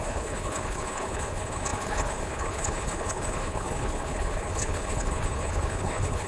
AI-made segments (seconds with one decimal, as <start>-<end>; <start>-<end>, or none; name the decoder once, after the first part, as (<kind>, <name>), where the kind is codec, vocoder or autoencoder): 0.0-6.3 (codec, HILCodec)